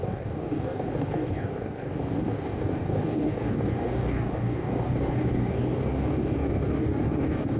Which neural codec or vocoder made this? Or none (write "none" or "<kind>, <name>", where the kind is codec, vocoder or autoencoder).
codec, DAC